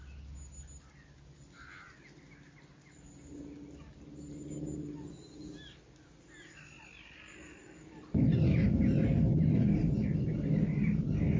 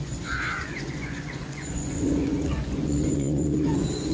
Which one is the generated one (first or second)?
second